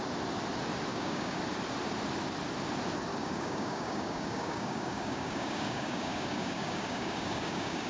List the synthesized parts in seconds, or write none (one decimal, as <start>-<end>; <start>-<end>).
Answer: 0.9-1.4; 3.1-7.9